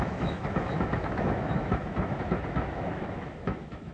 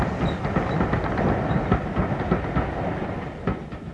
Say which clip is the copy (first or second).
first